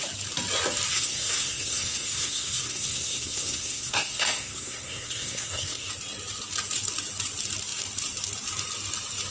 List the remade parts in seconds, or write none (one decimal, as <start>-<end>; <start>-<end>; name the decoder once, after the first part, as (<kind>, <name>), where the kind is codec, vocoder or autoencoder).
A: 0.9-5.9 (codec, SNAC)